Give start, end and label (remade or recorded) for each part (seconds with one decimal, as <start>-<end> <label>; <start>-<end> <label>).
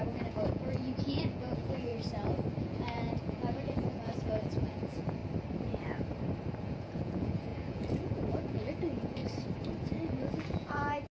0.0-1.9 remade; 1.9-2.6 recorded; 2.6-5.2 remade; 5.2-6.6 recorded; 6.6-9.2 remade; 9.2-9.8 recorded; 9.8-11.1 remade